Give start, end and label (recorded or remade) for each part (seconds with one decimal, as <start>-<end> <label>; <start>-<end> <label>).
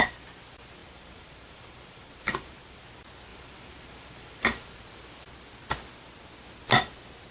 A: 0.0-0.8 recorded; 0.8-2.8 remade; 2.8-3.3 recorded; 3.3-5.3 remade; 5.3-7.3 recorded